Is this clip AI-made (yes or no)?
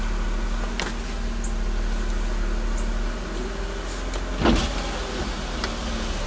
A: no